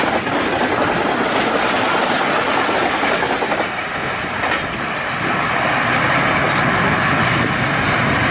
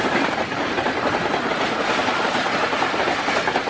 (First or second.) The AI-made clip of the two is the second